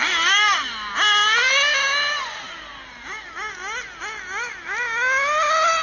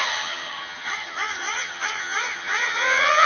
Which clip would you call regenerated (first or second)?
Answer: second